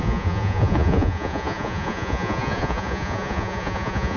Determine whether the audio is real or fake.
fake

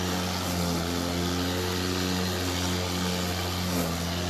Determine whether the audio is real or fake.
real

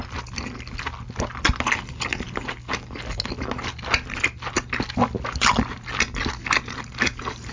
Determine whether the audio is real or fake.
real